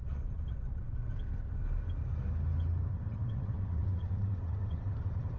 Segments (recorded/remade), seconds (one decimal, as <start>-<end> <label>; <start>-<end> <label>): 0.0-1.1 remade; 1.1-2.9 recorded; 2.9-5.4 remade